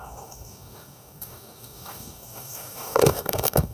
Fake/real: fake